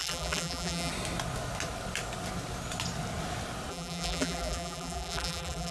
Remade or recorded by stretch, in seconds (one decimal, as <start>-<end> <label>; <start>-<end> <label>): 0.0-0.9 remade; 0.9-3.7 recorded; 3.7-5.7 remade